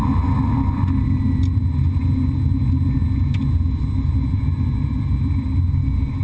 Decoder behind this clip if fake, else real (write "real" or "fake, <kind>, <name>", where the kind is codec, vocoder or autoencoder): real